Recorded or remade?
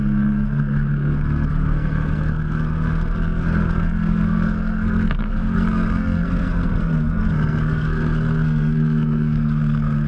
remade